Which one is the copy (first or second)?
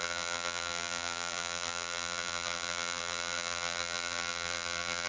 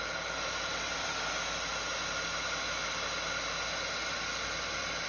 first